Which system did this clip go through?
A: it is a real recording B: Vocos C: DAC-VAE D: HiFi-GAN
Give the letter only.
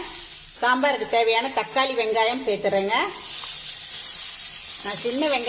A